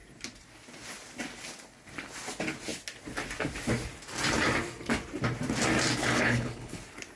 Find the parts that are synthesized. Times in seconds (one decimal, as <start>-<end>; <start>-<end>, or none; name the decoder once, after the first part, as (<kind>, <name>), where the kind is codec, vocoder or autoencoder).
6.0-6.8 (codec, HILCodec)